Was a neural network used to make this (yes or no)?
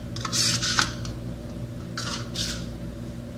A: no